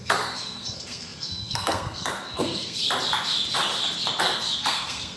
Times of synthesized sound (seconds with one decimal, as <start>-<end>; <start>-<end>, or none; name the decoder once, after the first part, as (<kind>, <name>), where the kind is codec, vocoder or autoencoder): 0.0-2.8 (codec, SNAC); 4.2-5.2